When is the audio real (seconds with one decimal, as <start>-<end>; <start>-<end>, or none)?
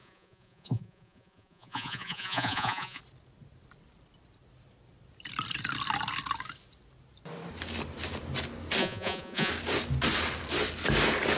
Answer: 3.0-8.8; 9.5-11.4